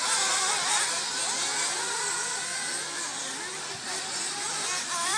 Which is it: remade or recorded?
recorded